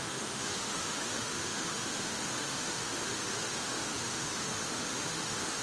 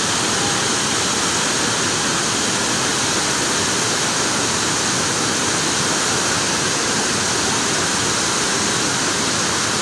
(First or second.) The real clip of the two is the second